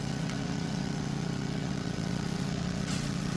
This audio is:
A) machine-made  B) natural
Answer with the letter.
A